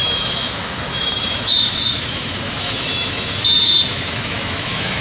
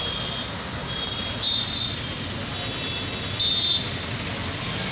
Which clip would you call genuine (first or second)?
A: second